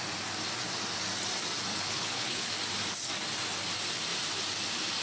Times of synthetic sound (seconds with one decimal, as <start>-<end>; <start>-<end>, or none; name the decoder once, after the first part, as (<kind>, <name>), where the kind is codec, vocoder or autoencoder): 1.7-2.5 (codec, HILCodec)